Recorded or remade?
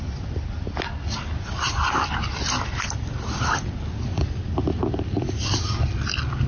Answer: recorded